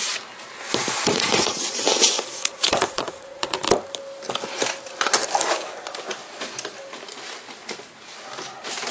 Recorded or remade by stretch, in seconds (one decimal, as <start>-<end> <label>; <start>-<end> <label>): 0.0-0.8 recorded; 0.8-3.6 remade; 3.6-8.9 recorded

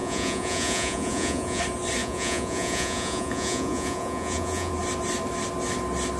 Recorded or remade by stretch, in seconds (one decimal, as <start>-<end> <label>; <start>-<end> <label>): 0.0-1.6 remade; 1.6-2.0 recorded; 2.0-4.7 remade; 4.7-6.2 recorded

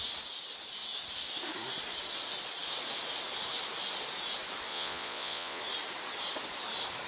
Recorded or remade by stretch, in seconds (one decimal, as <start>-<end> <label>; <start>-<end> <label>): 0.0-4.7 recorded; 4.7-5.6 remade; 5.6-7.1 recorded

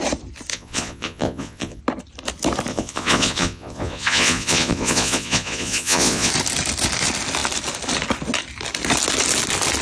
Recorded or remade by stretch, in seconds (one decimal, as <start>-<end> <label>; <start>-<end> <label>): 0.0-0.5 recorded; 0.5-1.8 remade; 1.8-2.7 recorded; 2.7-6.3 remade; 6.3-9.8 recorded